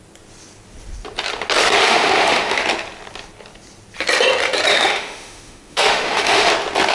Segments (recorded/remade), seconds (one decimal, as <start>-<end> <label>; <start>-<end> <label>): 0.0-1.8 recorded; 1.8-2.6 remade; 2.6-4.7 recorded; 4.7-6.5 remade; 6.5-6.9 recorded